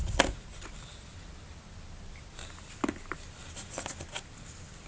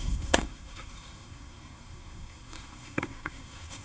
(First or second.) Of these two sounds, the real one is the first